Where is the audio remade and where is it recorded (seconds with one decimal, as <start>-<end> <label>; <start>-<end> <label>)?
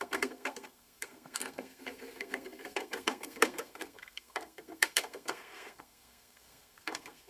0.0-7.3 remade